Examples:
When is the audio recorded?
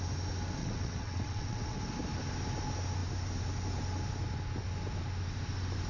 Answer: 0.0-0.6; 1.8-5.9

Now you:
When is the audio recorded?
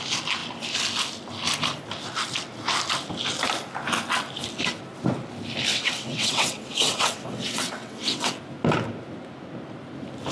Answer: 0.0-5.7; 8.3-10.3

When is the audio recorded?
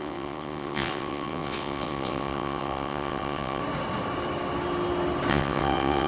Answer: 3.6-5.3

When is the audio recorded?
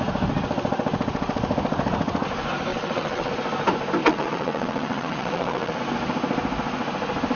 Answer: 0.0-2.7; 3.3-4.0; 5.8-7.3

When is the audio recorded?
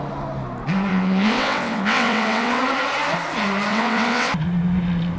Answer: 0.0-0.9; 2.6-3.7; 4.3-5.2